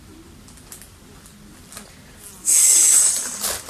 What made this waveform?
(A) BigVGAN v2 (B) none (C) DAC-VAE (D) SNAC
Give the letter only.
B